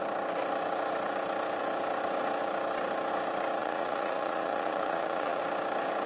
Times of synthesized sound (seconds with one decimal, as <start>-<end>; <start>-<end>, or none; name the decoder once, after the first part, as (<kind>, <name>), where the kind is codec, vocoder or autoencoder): 3.6-5.4 (vocoder, Vocos)

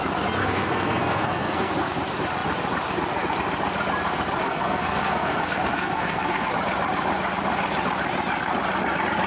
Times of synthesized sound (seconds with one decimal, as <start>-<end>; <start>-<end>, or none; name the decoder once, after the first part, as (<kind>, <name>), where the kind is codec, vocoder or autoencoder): 0.4-1.7 (codec, SNAC); 4.4-6.5

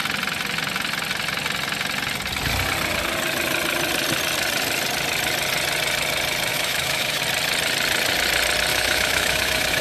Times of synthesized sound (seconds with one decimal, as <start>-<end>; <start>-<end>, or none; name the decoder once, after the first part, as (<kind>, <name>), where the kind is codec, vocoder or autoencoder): 6.5-7.2 (autoencoder, DAC-VAE); 8.7-9.8

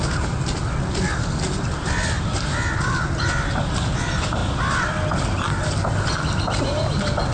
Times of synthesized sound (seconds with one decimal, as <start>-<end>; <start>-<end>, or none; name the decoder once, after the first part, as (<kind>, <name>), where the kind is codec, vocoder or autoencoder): none

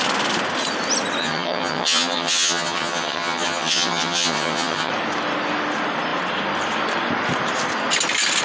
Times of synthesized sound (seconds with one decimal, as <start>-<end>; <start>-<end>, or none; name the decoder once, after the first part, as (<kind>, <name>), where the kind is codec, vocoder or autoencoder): 1.2-4.9 (vocoder, HiFi-GAN)